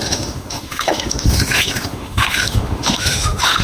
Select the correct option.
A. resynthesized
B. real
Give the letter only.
A